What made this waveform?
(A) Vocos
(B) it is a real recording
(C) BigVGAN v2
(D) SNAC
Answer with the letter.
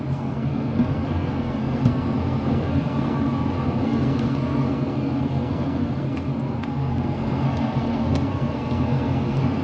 D